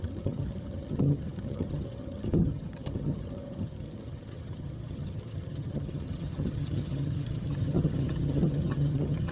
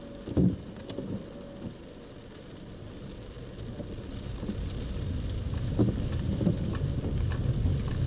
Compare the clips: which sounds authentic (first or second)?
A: second